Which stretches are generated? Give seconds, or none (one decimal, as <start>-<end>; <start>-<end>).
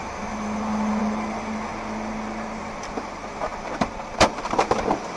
0.0-1.7; 2.6-5.2